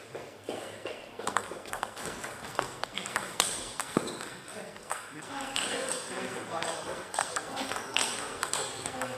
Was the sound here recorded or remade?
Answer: remade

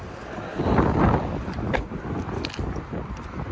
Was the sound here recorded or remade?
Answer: recorded